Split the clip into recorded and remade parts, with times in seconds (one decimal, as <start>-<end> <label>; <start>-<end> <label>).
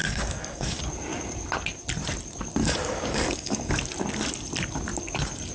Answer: 0.0-0.8 remade; 0.8-2.6 recorded; 2.6-3.7 remade; 3.7-5.5 recorded